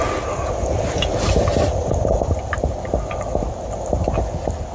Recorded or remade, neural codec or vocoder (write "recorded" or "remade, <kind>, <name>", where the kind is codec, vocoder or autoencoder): recorded